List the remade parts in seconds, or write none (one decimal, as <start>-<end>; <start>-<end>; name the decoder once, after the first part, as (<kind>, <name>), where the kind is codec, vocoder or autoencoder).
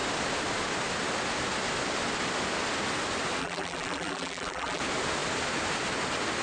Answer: 3.4-4.8 (vocoder, BigVGAN v2)